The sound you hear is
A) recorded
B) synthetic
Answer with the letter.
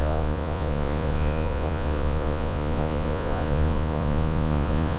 B